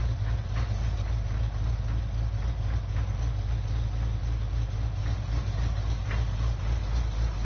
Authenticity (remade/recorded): recorded